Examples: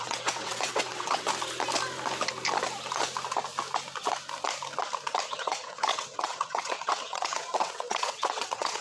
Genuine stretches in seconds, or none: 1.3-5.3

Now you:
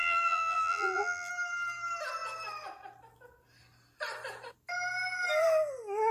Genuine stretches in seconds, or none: 1.3-6.1

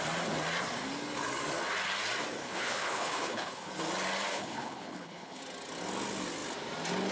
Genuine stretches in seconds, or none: 0.0-2.4; 3.7-4.3; 5.4-7.1